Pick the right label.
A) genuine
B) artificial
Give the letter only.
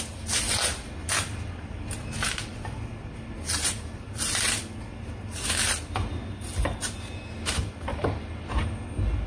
A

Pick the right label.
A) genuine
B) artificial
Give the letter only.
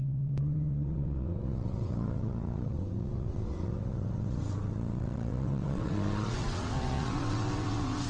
B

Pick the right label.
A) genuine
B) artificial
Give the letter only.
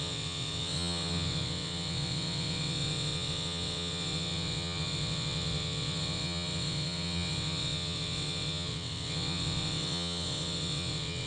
B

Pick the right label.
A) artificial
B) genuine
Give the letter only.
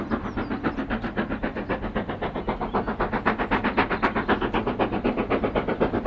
B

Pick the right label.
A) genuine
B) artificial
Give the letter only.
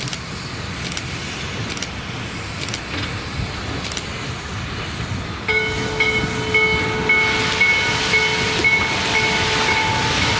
A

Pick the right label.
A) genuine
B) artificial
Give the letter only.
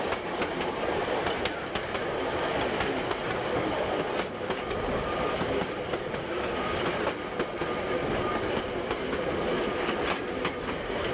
A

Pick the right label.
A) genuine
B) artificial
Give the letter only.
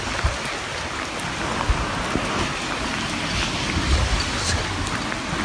A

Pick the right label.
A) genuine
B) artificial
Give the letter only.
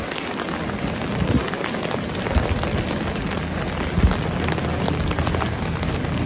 A